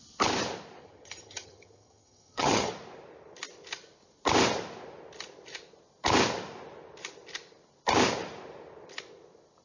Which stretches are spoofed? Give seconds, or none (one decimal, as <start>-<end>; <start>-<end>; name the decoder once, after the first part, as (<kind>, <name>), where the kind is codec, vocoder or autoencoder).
0.8-2.7 (vocoder, HiFi-GAN)